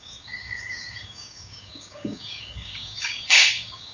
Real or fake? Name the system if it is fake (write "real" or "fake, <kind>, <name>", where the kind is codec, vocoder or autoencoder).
fake, codec, DAC